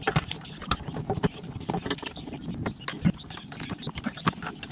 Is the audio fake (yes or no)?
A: no